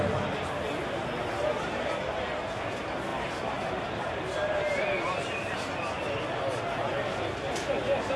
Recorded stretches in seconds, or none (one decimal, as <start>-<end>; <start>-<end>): 0.0-8.2